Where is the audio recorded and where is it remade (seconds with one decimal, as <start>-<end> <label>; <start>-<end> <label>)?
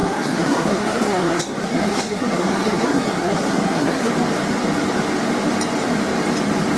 0.0-4.1 remade; 4.1-6.8 recorded